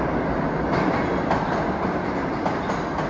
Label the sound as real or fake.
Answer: real